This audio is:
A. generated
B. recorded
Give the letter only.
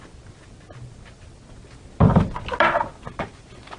B